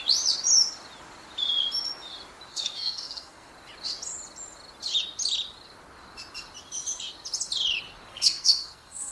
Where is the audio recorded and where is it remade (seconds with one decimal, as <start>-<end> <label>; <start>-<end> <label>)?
0.0-2.5 recorded; 2.5-3.5 remade; 3.5-8.1 recorded; 8.1-9.1 remade